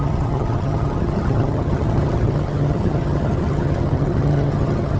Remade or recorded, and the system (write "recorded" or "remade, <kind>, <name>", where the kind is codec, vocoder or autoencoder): remade, vocoder, HiFi-GAN